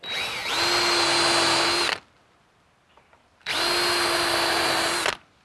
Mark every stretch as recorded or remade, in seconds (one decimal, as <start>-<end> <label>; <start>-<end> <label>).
0.0-5.4 recorded